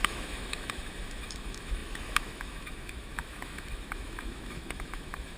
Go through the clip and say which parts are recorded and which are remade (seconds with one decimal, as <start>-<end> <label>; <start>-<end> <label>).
0.0-5.4 remade